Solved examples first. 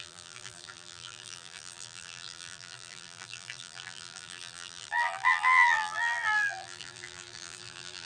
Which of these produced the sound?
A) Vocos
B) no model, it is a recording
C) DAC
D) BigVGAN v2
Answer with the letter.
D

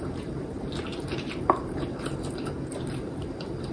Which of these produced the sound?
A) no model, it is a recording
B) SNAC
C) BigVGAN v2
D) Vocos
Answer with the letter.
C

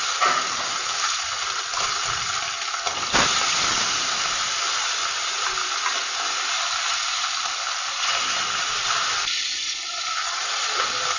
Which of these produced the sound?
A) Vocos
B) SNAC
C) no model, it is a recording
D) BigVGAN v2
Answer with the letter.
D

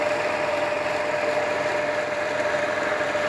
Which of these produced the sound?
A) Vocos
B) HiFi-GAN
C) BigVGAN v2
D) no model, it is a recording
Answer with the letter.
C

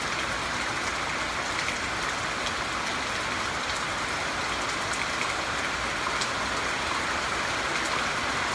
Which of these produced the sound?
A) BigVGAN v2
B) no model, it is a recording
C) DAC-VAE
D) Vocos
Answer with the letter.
B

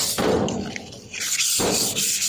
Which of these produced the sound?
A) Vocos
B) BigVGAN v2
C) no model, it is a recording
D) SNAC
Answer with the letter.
C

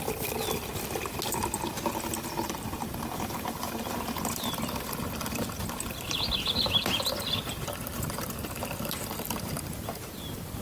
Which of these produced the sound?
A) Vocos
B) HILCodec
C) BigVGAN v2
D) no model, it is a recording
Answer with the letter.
D